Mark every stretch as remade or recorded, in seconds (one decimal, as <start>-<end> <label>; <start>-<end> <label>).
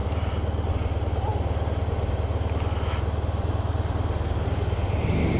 0.0-5.4 recorded